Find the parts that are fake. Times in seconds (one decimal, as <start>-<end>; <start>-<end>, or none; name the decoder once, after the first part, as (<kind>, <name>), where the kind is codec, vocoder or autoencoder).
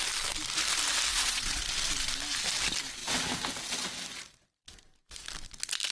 1.1-1.6 (vocoder, Vocos)